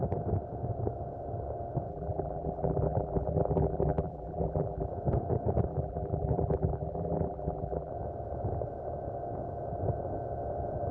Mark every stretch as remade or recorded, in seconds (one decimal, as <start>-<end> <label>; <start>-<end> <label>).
0.0-1.9 recorded; 1.9-4.9 remade; 4.9-5.7 recorded; 5.7-7.9 remade; 7.9-10.9 recorded